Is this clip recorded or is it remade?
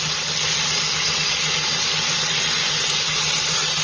recorded